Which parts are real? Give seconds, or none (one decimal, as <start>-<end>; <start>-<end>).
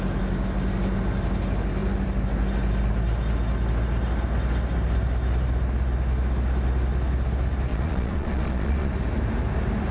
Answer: 0.0-7.7; 8.9-9.9